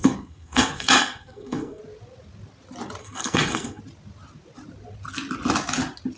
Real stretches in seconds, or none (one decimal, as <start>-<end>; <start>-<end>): 1.8-3.0; 3.8-6.2